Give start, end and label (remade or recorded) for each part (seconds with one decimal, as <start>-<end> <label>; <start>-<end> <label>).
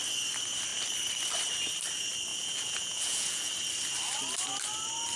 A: 0.0-2.3 recorded; 2.3-3.5 remade; 3.5-5.2 recorded